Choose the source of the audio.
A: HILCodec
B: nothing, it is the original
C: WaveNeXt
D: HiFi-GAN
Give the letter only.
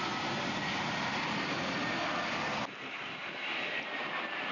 B